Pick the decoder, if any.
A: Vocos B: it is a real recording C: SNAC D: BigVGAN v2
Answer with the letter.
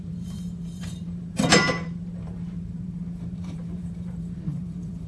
D